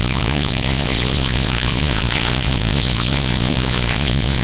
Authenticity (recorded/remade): remade